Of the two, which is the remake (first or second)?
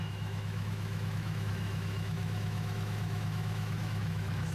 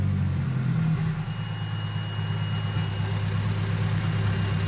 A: first